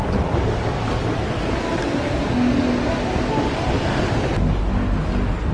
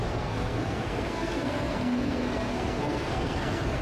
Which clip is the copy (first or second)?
second